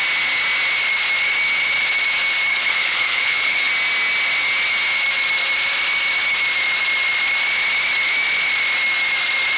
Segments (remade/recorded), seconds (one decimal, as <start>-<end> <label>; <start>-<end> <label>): 0.0-2.5 recorded; 2.5-3.7 remade; 3.7-9.6 recorded